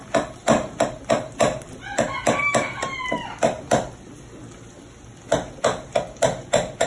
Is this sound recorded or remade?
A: recorded